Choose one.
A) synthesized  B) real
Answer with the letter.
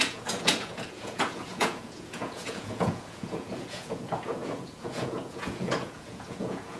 A